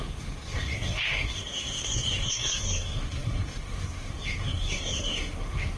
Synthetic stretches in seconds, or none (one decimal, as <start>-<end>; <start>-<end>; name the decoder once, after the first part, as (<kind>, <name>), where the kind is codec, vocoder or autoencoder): 0.0-5.8 (codec, SNAC)